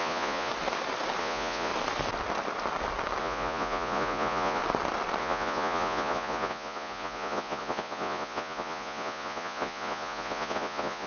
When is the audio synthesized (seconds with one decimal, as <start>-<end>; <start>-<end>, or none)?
0.0-0.5; 1.2-1.7; 3.2-4.6; 5.2-11.1